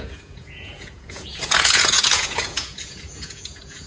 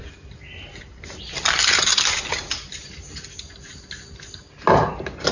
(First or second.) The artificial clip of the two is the first